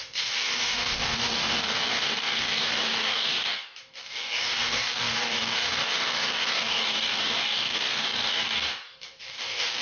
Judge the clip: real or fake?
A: fake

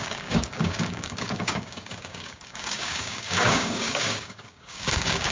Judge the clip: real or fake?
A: fake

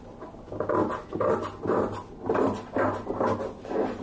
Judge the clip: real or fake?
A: real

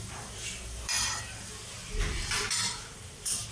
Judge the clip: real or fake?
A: fake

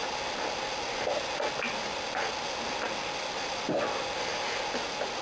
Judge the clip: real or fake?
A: real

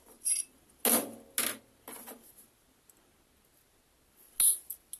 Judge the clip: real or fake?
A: real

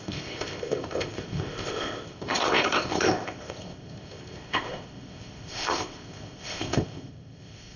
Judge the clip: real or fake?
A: fake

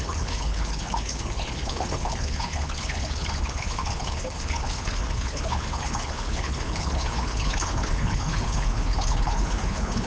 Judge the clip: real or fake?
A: fake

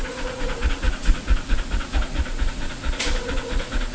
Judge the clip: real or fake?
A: fake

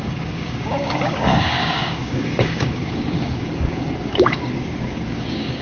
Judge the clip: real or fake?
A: fake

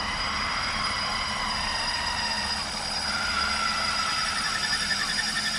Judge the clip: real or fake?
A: real